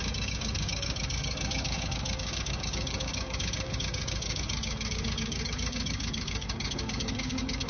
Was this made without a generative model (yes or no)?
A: no